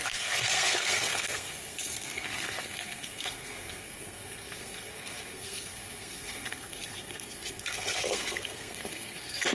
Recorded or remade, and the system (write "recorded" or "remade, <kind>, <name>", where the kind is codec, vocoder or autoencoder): remade, codec, SNAC